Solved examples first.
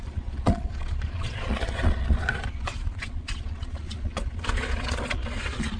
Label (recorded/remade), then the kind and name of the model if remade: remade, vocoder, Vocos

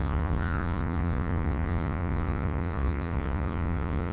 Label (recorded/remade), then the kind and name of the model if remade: remade, vocoder, Vocos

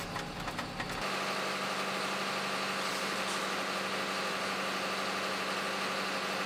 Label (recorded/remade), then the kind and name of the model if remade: recorded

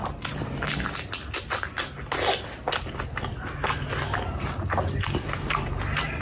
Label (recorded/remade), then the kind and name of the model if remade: recorded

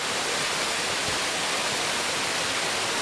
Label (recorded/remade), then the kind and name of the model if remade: recorded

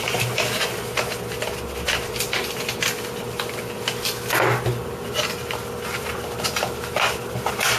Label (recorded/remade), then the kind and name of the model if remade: recorded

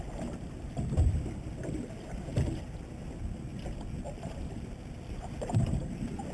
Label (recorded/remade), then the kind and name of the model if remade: recorded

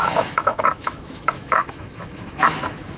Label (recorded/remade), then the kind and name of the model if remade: remade, autoencoder, DAC-VAE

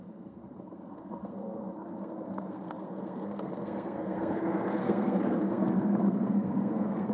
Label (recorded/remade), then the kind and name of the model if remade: remade, codec, SNAC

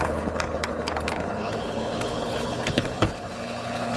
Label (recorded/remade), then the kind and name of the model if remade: remade, codec, HILCodec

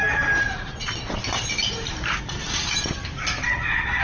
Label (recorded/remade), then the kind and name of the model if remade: recorded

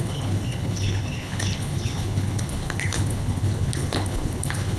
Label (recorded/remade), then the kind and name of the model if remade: remade, codec, HILCodec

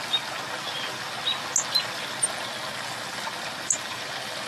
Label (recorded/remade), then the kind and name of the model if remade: recorded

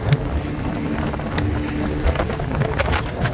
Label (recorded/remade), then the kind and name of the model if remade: recorded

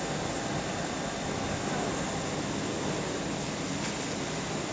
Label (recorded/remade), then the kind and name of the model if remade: recorded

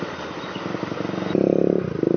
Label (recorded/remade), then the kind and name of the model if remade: recorded